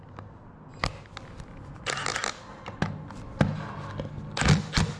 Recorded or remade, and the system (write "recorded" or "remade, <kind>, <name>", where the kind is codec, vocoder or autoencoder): recorded